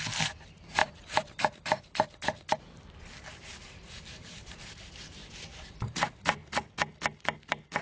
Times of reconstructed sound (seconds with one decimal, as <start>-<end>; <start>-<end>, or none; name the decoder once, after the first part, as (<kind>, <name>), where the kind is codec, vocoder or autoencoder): 0.0-6.4 (vocoder, BigVGAN v2)